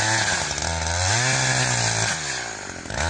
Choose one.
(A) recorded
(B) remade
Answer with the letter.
A